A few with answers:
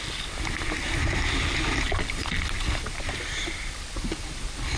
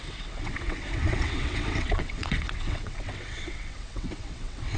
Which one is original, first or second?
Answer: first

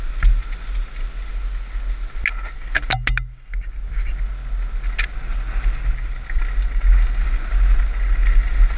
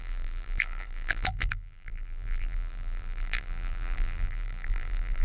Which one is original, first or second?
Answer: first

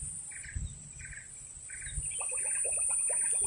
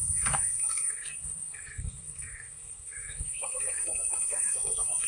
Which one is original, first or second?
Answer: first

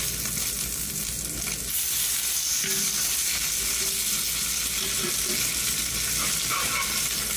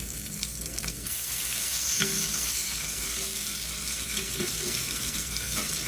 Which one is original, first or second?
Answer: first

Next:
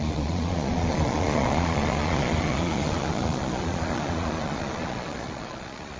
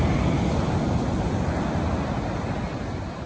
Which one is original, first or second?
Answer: second